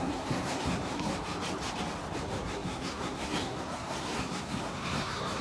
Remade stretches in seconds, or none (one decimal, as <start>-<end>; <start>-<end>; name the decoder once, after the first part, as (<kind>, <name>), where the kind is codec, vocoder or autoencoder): 0.0-1.1 (codec, SNAC); 2.2-5.4